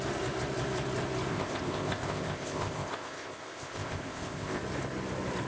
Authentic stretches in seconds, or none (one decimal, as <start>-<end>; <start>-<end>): 0.0-1.3; 4.6-5.5